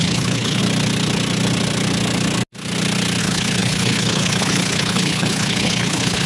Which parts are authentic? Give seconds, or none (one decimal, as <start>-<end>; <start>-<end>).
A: 0.6-3.2